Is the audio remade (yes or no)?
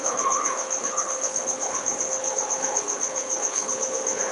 yes